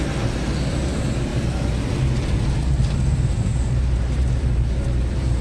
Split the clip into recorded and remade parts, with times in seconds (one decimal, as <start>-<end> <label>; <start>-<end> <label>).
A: 0.0-5.4 remade